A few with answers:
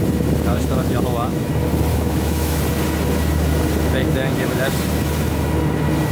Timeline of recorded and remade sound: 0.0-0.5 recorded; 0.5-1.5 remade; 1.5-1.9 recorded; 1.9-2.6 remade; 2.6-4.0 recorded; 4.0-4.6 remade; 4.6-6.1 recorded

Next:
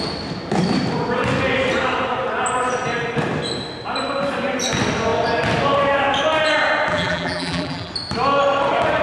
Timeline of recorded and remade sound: 0.0-6.9 recorded; 6.9-7.9 remade; 7.9-9.0 recorded